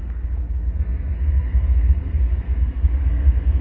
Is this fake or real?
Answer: fake